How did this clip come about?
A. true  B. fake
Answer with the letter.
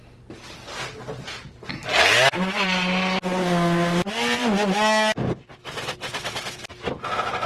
A